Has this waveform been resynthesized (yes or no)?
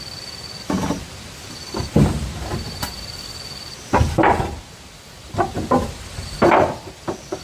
no